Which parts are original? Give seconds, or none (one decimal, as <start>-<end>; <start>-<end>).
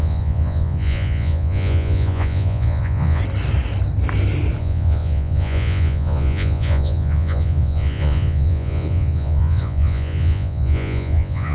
3.2-4.6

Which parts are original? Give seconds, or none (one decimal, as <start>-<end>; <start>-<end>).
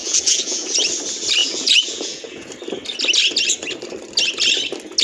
0.7-1.4; 2.5-5.0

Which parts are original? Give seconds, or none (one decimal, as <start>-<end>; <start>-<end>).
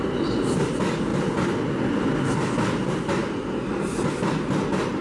0.0-5.0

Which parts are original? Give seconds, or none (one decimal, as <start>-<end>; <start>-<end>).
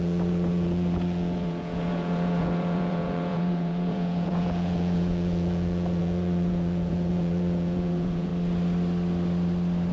8.3-9.9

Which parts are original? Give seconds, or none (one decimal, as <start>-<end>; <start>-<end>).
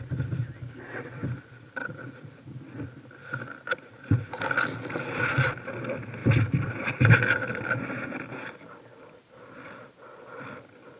0.0-1.8; 2.6-11.0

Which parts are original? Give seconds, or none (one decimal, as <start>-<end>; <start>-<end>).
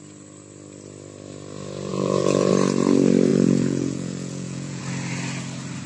0.0-1.9; 2.5-3.3; 4.8-5.9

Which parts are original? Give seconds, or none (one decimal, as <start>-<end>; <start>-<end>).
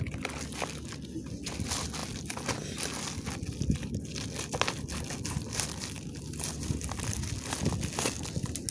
0.0-8.7